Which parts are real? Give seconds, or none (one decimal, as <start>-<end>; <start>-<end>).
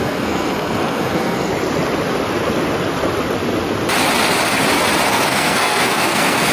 1.5-5.1